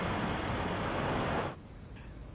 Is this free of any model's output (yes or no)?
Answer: yes